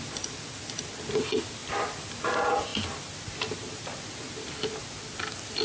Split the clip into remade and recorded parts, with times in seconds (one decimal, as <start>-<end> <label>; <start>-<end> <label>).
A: 0.0-5.6 recorded